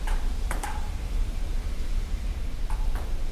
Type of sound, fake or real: fake